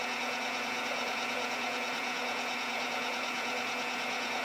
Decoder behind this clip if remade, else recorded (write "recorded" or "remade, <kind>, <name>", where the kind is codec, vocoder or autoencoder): remade, vocoder, Vocos